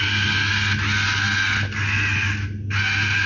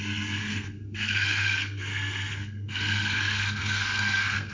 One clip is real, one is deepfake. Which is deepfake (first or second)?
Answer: second